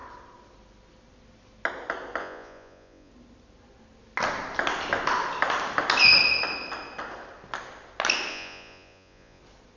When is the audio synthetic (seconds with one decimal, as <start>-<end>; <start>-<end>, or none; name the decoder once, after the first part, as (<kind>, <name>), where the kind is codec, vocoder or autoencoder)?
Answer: 2.2-3.1 (vocoder, Vocos); 8.3-9.4